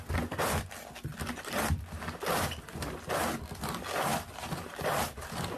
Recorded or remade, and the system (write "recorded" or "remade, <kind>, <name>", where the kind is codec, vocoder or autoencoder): recorded